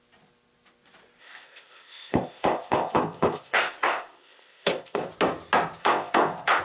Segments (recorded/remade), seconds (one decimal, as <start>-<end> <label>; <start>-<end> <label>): 0.0-1.2 recorded; 1.2-5.1 remade; 5.1-5.8 recorded; 5.8-6.6 remade